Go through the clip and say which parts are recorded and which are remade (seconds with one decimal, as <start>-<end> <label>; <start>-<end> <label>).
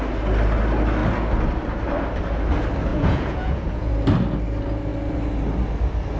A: 0.0-2.9 recorded; 2.9-3.9 remade; 3.9-6.2 recorded